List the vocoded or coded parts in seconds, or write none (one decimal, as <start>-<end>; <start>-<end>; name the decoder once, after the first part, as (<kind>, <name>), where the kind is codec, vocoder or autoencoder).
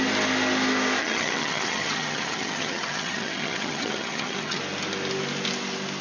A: 1.0-4.6 (vocoder, HiFi-GAN)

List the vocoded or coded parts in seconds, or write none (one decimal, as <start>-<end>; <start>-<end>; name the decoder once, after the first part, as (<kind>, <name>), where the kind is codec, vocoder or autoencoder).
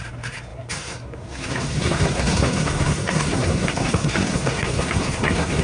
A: 0.0-5.6 (codec, SNAC)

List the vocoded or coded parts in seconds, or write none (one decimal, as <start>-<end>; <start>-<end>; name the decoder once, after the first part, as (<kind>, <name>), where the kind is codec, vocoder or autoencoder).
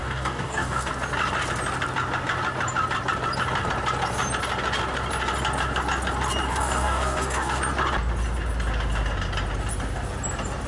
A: 0.0-0.9 (codec, DAC); 6.5-7.6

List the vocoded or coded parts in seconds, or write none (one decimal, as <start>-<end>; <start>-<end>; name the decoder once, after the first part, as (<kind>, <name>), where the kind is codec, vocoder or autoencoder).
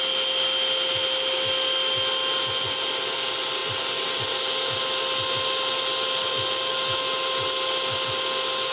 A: none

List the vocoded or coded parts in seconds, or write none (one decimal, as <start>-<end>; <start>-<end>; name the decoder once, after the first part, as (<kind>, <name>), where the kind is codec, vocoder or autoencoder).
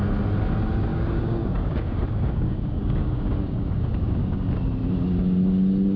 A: 0.9-4.5 (codec, DAC)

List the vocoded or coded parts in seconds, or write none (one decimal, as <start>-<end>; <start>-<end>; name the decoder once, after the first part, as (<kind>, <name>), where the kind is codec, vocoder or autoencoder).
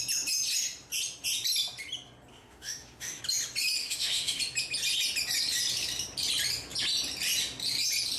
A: 2.3-3.2 (autoencoder, DAC-VAE); 3.8-4.4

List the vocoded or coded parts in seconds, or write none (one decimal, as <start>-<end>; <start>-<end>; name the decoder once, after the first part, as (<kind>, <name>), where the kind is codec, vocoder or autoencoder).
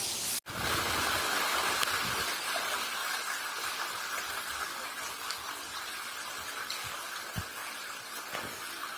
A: 3.0-4.3 (vocoder, BigVGAN v2); 7.6-8.3